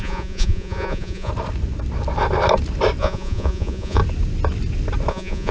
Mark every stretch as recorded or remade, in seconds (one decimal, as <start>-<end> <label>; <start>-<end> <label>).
0.0-1.3 remade; 1.3-3.0 recorded; 3.0-4.0 remade; 4.0-5.1 recorded; 5.1-5.5 remade